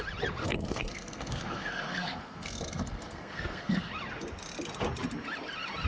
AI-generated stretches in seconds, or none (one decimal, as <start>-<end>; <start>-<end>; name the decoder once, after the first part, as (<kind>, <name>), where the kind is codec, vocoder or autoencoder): 0.4-3.9 (codec, SNAC)